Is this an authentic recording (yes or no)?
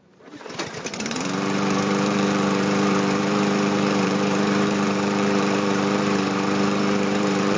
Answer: no